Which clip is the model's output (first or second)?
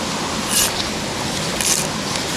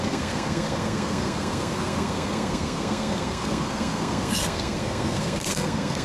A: second